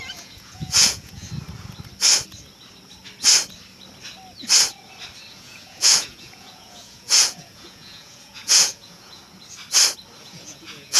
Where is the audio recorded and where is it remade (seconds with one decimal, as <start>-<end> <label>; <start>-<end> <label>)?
0.0-1.2 remade; 1.2-5.3 recorded; 5.3-9.2 remade; 9.2-10.2 recorded; 10.2-11.0 remade

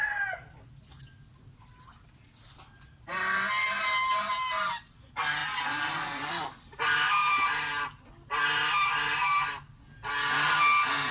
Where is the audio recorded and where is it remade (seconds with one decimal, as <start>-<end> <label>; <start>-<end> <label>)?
0.0-11.1 recorded